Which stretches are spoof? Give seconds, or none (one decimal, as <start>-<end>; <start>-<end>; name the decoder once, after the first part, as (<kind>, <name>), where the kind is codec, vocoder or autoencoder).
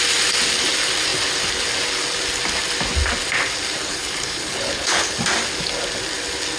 3.8-5.2 (codec, HILCodec)